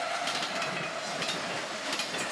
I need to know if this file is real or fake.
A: real